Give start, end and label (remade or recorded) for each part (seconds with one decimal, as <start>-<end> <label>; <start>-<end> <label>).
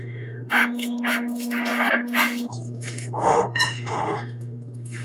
0.0-5.0 remade